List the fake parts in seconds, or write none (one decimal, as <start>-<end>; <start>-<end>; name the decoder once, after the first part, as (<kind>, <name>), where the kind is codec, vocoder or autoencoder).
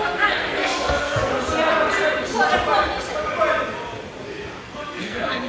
0.0-1.3 (codec, SNAC); 4.6-5.5